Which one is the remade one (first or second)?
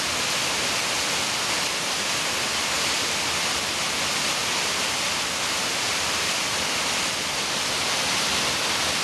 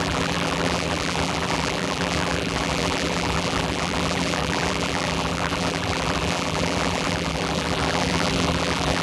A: second